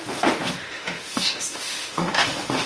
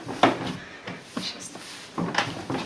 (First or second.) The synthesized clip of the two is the first